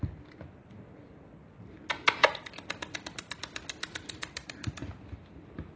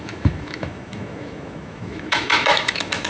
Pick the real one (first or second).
first